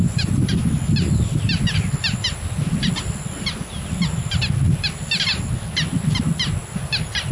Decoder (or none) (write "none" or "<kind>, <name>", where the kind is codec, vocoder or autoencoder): none